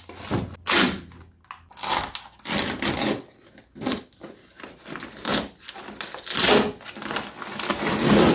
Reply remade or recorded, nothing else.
recorded